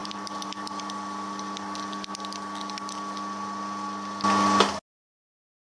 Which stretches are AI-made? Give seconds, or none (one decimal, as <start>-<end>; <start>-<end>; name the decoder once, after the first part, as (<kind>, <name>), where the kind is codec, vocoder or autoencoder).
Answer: 0.0-0.8 (vocoder, BigVGAN v2)